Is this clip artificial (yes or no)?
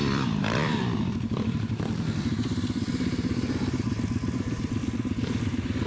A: yes